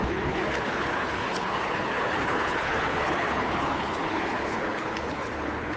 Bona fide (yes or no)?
no